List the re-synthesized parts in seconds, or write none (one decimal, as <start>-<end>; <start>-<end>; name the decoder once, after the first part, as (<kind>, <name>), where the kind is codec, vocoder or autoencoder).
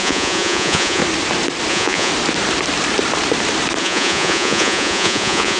0.0-1.0 (vocoder, Vocos); 1.7-2.1; 3.8-5.6